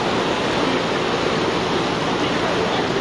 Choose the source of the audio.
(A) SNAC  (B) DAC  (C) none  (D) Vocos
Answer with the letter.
C